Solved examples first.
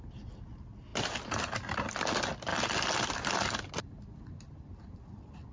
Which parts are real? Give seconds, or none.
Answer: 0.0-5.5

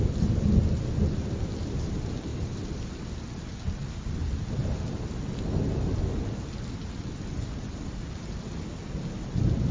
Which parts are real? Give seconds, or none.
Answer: 0.0-9.7

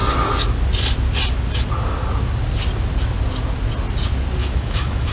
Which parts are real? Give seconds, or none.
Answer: 0.0-4.4

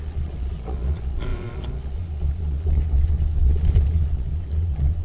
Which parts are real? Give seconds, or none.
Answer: none

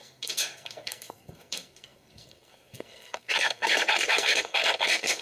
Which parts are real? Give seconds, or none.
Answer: none

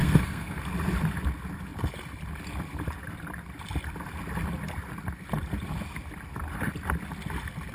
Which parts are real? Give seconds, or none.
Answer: 0.6-7.7

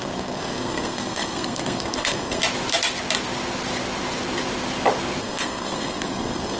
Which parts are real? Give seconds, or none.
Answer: 2.4-5.2

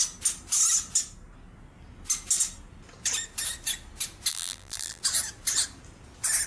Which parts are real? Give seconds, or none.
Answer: 0.0-4.3; 5.0-6.5